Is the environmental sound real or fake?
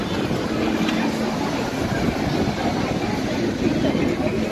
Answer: real